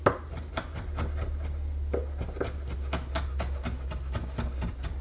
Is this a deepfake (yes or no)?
no